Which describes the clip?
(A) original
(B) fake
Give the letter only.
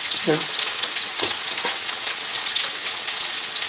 B